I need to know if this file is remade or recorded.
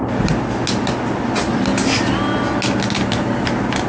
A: recorded